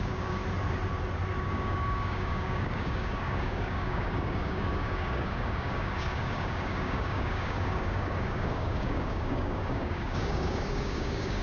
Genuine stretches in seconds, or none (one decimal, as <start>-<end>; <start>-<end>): 0.4-1.4